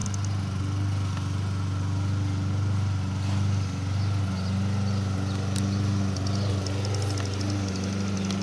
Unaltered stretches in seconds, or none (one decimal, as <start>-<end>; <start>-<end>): 0.0-8.4